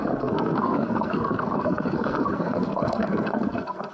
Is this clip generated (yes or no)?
yes